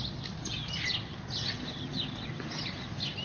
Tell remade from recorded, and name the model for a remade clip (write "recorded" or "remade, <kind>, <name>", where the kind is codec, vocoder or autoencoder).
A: recorded